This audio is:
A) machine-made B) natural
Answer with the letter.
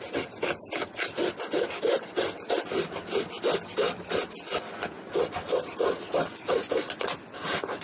B